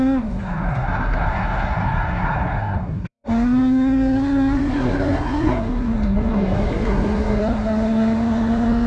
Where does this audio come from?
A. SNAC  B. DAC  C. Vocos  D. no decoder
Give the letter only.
A